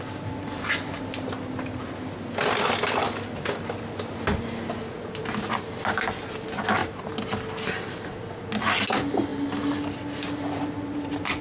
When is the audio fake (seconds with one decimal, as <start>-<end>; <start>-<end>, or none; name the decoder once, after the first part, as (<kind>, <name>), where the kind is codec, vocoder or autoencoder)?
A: none